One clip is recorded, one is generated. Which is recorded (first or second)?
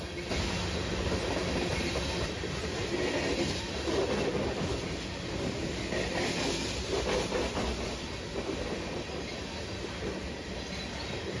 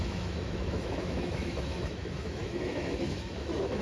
first